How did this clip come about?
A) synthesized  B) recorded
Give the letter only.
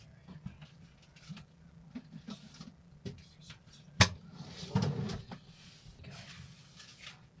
B